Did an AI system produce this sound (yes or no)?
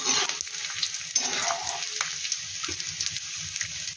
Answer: no